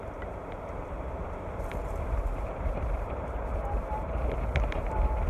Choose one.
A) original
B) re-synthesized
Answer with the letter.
B